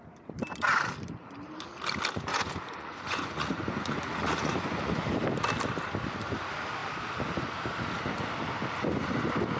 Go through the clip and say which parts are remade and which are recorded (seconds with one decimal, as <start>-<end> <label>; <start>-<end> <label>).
0.0-2.3 recorded; 2.3-5.0 remade; 5.0-9.6 recorded